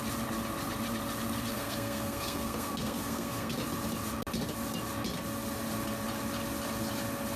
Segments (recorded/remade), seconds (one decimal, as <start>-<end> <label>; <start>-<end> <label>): 0.0-1.5 recorded; 1.5-3.5 remade; 3.5-7.4 recorded

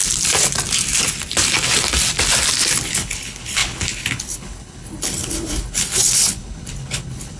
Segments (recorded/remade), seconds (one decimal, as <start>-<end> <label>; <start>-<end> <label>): 0.0-2.9 recorded; 2.9-7.4 remade

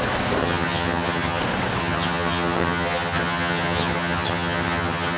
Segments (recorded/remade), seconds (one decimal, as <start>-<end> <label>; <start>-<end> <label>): 0.0-0.4 recorded; 0.4-1.4 remade; 1.4-1.8 recorded; 1.8-5.2 remade

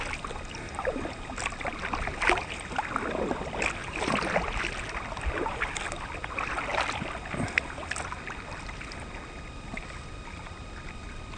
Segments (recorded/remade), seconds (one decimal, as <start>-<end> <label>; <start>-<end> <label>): 0.0-11.4 recorded

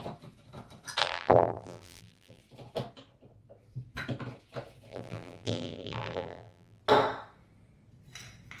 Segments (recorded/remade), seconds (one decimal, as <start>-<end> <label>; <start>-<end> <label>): 0.0-1.0 recorded; 1.0-2.4 remade; 2.4-4.9 recorded; 4.9-6.8 remade; 6.8-8.6 recorded

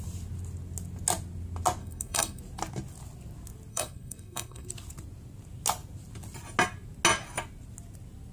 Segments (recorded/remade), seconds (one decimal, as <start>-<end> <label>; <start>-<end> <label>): 0.0-1.8 recorded; 1.8-2.4 remade; 2.4-3.7 recorded; 3.7-4.7 remade; 4.7-8.3 recorded

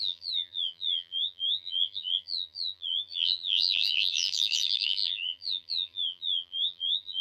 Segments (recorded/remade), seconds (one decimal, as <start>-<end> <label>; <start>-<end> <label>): 0.0-7.2 remade